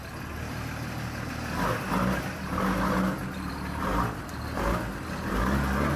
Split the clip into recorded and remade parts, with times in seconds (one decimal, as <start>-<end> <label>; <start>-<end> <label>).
0.0-6.0 recorded